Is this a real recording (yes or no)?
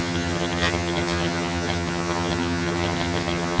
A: no